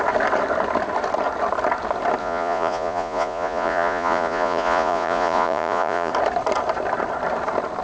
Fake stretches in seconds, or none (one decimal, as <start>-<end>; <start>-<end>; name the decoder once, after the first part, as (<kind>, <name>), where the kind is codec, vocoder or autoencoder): 2.2-6.1 (vocoder, Vocos)